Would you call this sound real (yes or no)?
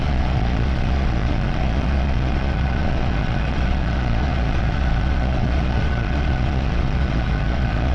no